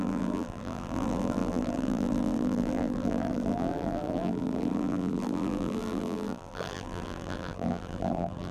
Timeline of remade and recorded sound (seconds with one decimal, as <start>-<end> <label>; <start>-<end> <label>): 0.0-8.5 remade